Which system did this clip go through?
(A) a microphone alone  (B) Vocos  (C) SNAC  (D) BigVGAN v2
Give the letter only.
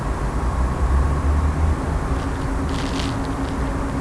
A